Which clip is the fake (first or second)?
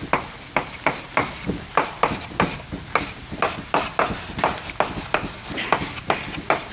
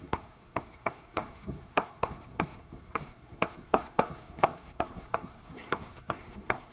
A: second